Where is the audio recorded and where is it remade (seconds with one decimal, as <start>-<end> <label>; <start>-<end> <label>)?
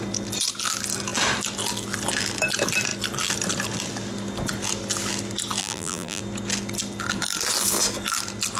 0.0-5.6 recorded; 5.6-6.2 remade; 6.2-8.6 recorded